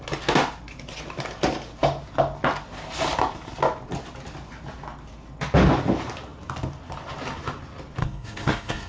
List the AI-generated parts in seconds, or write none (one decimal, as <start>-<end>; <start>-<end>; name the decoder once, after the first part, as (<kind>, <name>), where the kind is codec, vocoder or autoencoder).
8.0-8.9 (codec, SNAC)